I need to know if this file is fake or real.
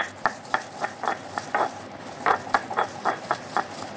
real